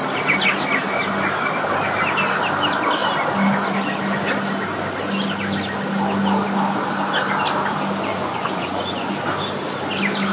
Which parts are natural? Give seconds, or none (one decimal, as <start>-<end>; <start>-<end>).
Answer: 0.0-8.1; 9.1-10.3